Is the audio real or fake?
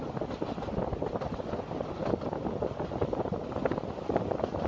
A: real